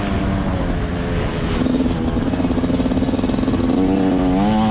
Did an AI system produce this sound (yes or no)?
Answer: no